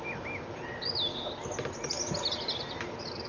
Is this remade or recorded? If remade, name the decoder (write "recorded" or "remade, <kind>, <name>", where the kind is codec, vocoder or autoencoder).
recorded